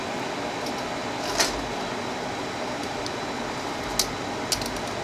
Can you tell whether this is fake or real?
real